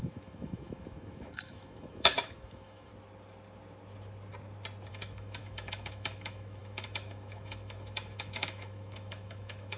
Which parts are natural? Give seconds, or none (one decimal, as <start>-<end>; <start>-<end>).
2.9-4.9